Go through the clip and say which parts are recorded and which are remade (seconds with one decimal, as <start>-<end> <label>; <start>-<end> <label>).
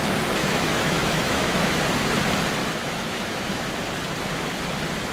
0.0-0.4 recorded; 0.4-1.8 remade; 1.8-2.6 recorded; 2.6-3.7 remade; 3.7-5.1 recorded